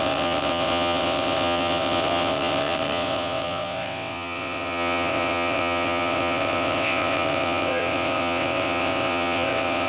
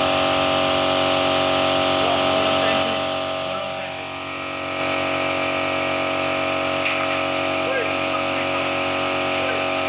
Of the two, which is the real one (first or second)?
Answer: second